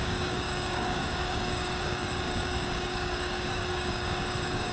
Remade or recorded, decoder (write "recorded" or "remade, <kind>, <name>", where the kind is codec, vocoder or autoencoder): remade, codec, DAC